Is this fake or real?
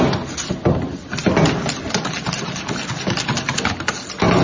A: real